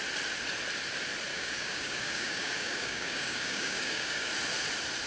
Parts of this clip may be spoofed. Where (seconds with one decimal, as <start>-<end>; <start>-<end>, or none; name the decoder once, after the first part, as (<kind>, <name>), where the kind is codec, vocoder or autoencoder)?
1.3-4.3 (codec, DAC)